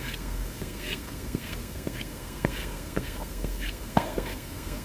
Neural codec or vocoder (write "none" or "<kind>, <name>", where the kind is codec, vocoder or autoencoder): codec, SNAC